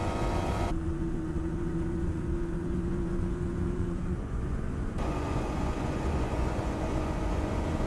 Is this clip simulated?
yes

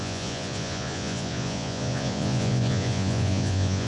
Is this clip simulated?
yes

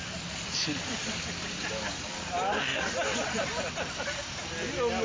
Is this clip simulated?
no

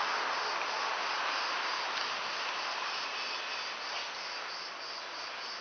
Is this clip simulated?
no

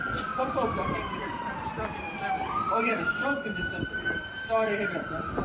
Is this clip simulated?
no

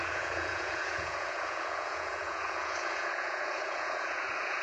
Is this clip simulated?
yes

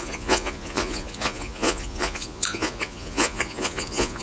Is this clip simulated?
yes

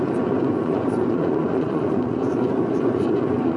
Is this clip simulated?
yes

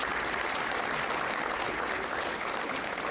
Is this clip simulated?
no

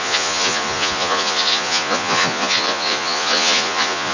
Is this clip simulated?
yes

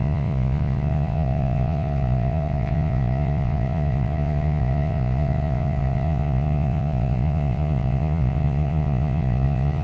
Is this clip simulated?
yes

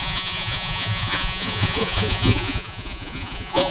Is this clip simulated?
yes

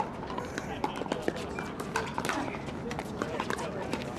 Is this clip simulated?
no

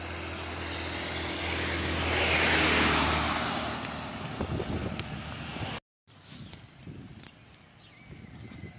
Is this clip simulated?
no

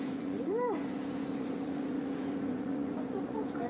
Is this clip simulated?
yes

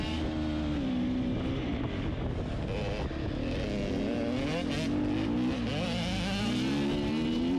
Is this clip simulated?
no